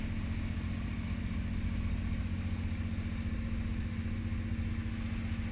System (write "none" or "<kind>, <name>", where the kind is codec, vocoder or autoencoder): none